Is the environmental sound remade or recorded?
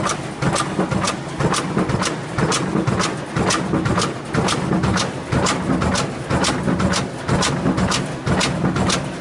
recorded